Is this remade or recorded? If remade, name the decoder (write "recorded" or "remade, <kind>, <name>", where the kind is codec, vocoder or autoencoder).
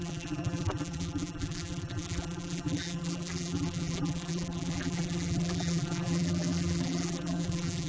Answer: remade, vocoder, BigVGAN v2